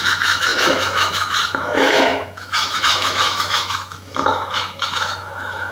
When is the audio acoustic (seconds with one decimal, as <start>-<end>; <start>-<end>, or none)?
none